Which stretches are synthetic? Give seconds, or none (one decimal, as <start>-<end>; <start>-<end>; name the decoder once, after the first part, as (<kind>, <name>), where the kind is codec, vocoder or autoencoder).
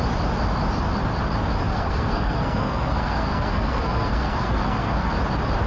1.7-5.1 (codec, SNAC)